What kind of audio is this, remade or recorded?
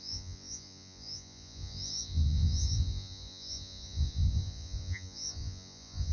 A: remade